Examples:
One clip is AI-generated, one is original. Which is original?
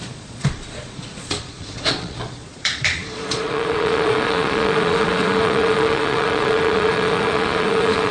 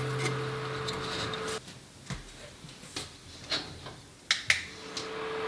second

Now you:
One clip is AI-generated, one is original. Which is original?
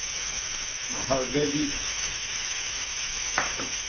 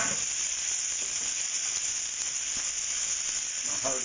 second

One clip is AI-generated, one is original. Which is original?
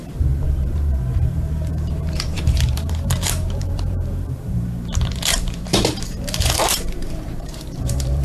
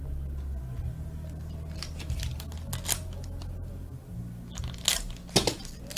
second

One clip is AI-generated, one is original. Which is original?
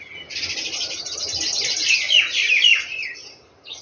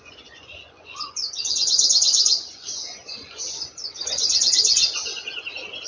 first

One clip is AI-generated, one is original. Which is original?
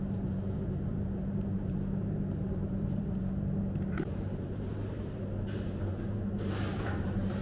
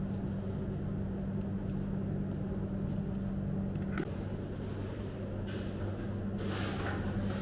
second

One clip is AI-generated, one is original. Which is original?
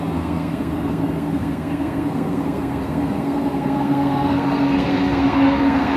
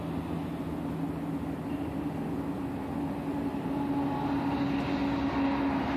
second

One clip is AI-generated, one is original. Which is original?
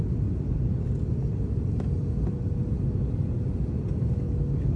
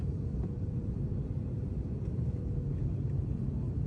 first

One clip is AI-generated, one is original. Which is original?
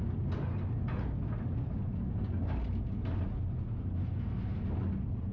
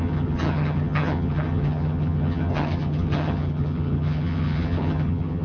first